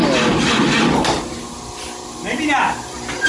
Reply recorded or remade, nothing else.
recorded